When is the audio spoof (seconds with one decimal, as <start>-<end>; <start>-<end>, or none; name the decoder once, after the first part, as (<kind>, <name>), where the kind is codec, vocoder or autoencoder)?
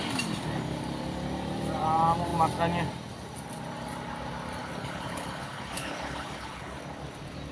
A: 4.6-6.8 (codec, HILCodec)